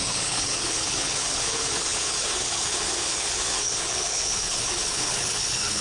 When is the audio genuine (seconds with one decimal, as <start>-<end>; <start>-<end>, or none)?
none